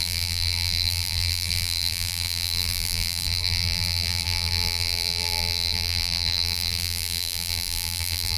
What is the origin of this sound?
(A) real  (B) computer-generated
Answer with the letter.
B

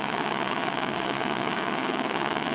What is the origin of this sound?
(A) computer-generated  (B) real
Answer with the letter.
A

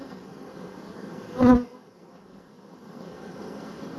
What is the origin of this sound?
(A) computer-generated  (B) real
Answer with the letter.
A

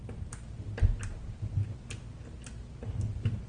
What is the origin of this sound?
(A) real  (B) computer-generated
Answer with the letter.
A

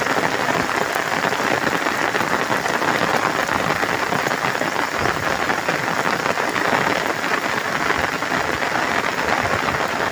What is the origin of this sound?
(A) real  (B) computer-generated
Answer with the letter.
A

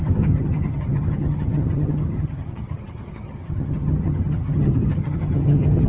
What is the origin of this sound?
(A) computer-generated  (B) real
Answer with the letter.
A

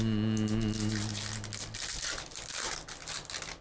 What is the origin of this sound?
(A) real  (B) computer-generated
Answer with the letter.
A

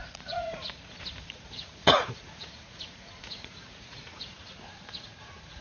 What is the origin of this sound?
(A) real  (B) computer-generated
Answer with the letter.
B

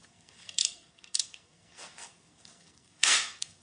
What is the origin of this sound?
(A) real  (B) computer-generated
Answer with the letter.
B